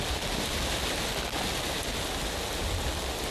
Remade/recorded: recorded